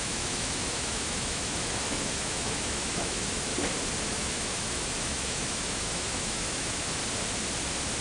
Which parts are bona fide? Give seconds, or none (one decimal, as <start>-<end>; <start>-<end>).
3.5-4.1; 7.0-8.0